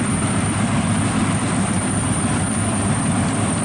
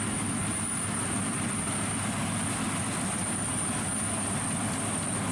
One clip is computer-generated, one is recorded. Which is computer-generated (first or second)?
first